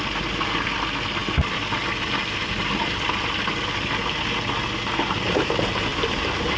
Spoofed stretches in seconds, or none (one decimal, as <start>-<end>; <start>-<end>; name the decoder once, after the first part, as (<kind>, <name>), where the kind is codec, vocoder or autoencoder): 5.9-6.6 (vocoder, BigVGAN v2)